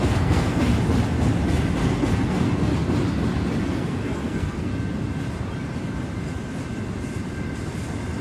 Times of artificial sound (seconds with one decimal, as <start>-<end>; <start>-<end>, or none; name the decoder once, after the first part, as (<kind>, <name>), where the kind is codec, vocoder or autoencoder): 0.0-0.7 (codec, SNAC); 1.9-2.7; 3.6-4.7